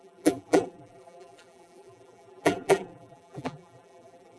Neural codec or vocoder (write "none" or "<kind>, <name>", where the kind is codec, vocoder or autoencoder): vocoder, BigVGAN v2